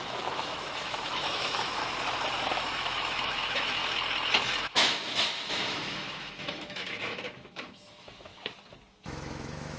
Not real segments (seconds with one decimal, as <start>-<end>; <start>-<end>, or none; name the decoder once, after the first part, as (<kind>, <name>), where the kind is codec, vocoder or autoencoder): 0.0-1.8 (autoencoder, DAC-VAE); 2.5-3.8; 4.6-8.3; 8.9-9.8

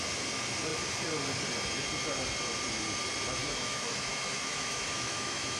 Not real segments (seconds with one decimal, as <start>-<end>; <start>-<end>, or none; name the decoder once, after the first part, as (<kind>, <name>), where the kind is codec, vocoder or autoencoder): 3.4-5.6 (autoencoder, DAC-VAE)

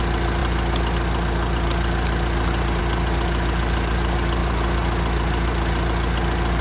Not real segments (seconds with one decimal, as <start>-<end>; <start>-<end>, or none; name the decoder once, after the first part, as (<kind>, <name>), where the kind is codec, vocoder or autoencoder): none

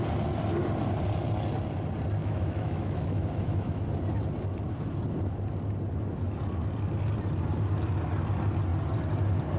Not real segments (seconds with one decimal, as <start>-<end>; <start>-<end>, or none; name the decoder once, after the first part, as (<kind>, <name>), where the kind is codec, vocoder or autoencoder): 2.2-3.8 (autoencoder, DAC-VAE)

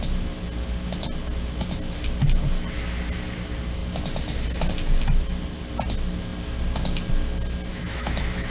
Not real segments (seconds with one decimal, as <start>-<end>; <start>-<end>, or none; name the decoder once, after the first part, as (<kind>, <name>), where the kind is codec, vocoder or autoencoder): 7.7-8.5 (autoencoder, DAC-VAE)

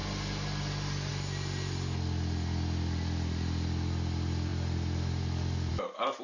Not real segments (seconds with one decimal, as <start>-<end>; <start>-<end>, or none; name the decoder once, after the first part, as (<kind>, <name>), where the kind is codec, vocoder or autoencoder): none

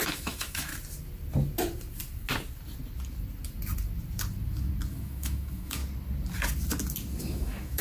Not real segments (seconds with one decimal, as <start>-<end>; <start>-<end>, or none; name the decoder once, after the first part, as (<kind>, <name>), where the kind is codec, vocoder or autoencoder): 0.0-0.7 (autoencoder, DAC-VAE); 4.9-5.8; 7.2-7.8

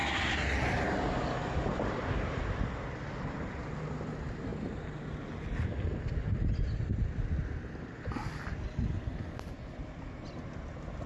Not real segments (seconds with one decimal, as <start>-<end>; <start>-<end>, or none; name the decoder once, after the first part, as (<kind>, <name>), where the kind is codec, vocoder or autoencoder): none